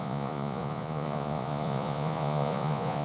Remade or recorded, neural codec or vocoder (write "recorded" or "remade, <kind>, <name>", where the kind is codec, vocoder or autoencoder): remade, vocoder, Vocos